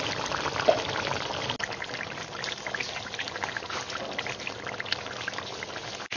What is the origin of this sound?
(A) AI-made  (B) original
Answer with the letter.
B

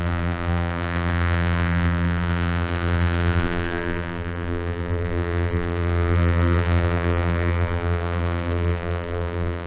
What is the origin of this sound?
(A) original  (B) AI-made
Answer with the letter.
B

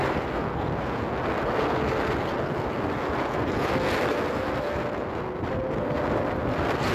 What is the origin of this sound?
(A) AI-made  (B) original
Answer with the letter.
B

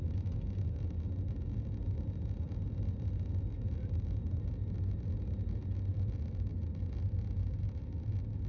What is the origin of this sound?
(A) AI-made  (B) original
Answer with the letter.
B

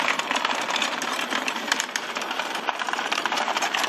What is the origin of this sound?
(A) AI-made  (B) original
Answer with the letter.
A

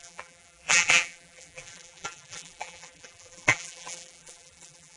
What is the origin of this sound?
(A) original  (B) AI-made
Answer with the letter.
B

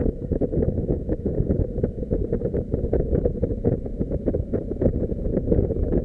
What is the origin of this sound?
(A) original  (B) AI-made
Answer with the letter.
B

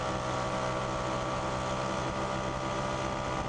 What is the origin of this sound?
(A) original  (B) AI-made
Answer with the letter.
A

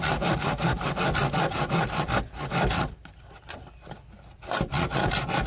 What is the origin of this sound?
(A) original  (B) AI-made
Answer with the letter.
A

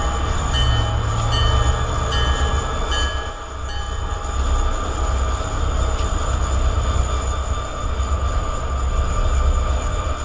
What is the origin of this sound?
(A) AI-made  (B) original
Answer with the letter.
B